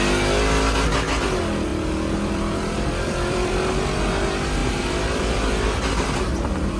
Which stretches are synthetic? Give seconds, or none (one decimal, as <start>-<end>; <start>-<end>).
1.7-3.7; 4.6-5.7